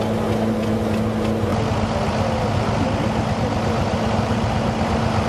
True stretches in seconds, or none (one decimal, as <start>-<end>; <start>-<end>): 0.0-5.3